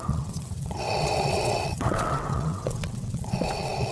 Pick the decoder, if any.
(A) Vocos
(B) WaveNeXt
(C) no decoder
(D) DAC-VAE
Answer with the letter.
B